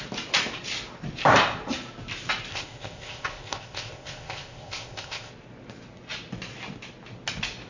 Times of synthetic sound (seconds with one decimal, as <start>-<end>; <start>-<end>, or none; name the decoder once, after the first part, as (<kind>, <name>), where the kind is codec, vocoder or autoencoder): 2.5-5.3 (codec, ZipCodec)